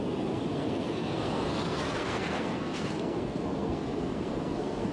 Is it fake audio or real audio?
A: fake